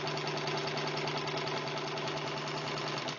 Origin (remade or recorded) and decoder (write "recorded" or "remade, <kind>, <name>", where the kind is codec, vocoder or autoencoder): recorded